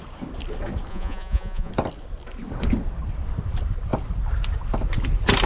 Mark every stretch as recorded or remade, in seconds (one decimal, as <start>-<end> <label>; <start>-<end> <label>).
0.0-0.9 recorded; 0.9-1.7 remade; 1.7-5.5 recorded